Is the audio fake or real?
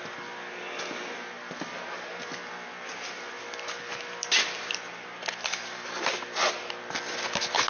real